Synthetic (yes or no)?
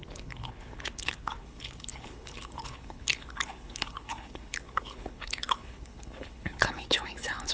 yes